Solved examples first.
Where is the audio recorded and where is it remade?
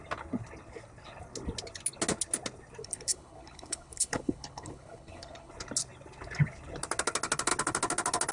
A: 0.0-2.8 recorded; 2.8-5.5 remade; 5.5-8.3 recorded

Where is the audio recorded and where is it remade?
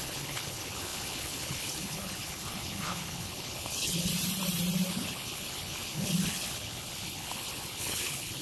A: 0.0-4.1 remade; 4.1-4.9 recorded; 4.9-8.4 remade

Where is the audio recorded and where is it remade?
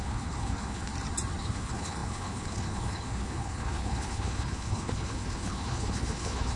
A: 0.0-0.9 remade; 0.9-1.4 recorded; 1.4-6.6 remade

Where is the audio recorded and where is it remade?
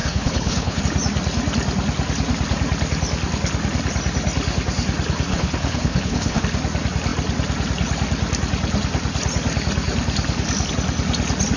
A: 0.0-0.8 remade; 0.8-5.3 recorded; 5.3-6.4 remade; 6.4-11.6 recorded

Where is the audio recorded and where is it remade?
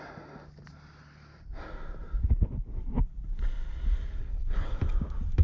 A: 0.0-4.2 recorded; 4.2-4.8 remade; 4.8-5.4 recorded